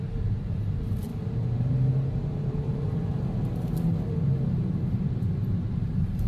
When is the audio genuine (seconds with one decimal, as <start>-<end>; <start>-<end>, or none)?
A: 1.1-1.9; 3.1-5.5